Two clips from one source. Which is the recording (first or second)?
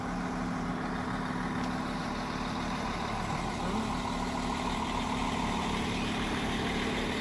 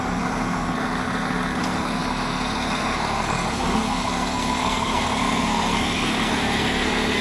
first